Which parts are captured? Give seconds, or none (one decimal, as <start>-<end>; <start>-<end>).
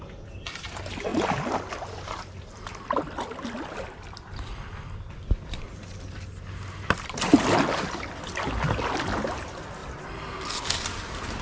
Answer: 0.0-11.4